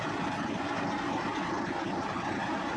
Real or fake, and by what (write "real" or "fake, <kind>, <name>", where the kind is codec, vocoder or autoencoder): real